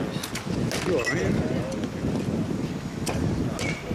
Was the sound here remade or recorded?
recorded